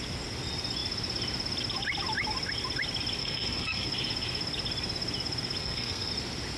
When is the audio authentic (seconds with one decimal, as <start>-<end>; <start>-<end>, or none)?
0.0-3.2; 3.9-5.6; 6.1-6.6